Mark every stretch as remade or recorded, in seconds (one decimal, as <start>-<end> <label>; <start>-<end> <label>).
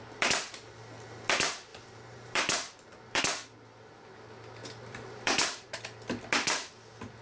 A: 0.0-1.7 recorded; 1.7-3.2 remade; 3.2-4.6 recorded; 4.6-5.8 remade; 5.8-7.2 recorded